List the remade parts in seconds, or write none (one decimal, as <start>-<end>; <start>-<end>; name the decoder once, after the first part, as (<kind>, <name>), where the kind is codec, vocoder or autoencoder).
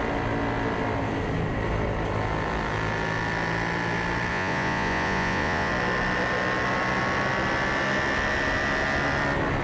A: 4.3-5.7 (vocoder, Vocos)